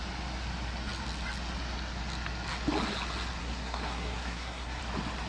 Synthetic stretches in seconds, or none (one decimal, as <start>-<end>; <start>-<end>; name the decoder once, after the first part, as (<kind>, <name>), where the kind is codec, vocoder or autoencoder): 3.4-4.8 (codec, SNAC)